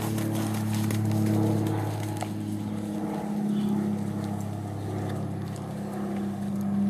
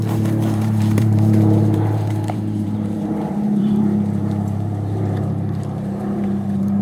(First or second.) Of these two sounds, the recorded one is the first